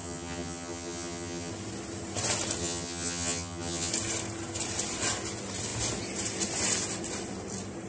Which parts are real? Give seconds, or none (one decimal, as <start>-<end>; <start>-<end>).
1.5-2.6; 3.9-7.9